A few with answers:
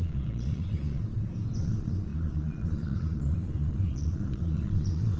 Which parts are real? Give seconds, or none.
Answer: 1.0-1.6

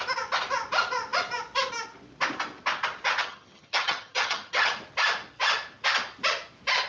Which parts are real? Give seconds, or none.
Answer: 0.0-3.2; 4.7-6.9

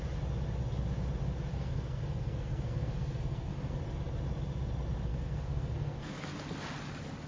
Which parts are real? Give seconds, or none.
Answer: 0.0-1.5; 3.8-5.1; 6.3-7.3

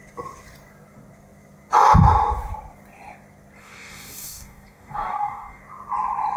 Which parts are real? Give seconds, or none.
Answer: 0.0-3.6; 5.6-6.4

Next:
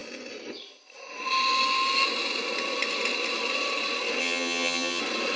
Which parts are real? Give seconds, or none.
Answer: 0.0-4.2; 5.0-5.4

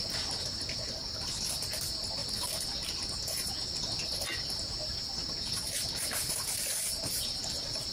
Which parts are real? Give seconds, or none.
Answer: 0.0-7.9

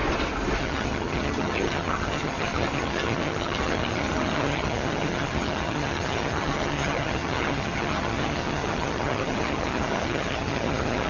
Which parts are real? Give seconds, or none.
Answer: 0.0-0.6

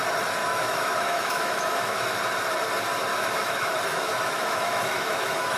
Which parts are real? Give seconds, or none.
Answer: 0.0-0.4; 2.2-3.1